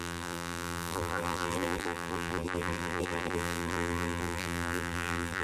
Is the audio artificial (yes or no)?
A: yes